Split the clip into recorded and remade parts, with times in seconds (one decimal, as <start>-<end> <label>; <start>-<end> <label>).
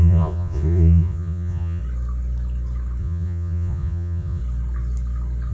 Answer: 0.0-1.8 remade; 1.8-3.0 recorded; 3.0-4.4 remade; 4.4-5.5 recorded